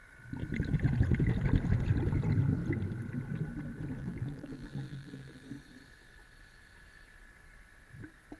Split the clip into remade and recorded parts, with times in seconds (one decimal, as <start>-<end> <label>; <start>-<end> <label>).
0.0-4.0 recorded; 4.0-5.4 remade; 5.4-8.4 recorded